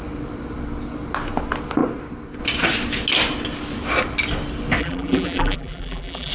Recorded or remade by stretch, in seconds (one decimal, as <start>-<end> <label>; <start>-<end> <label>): 0.0-4.8 recorded; 4.8-6.3 remade